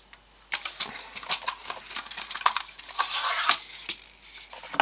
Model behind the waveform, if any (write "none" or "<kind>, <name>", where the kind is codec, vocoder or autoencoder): none